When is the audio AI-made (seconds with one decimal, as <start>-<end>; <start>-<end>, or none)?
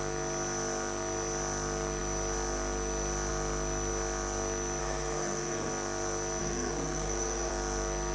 4.8-5.7; 6.4-7.5